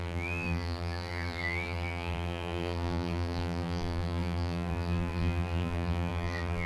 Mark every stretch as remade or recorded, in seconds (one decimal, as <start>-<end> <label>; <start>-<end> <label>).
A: 0.0-6.7 remade